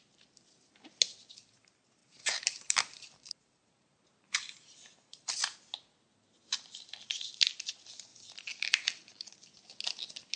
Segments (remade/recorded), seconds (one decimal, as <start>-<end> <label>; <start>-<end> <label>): 0.0-2.0 recorded; 2.0-5.3 remade; 5.3-8.1 recorded; 8.1-9.3 remade; 9.3-10.4 recorded